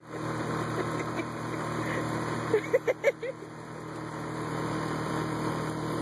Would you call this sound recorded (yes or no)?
yes